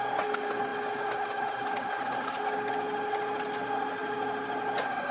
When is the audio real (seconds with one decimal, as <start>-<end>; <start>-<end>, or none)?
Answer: 0.0-5.1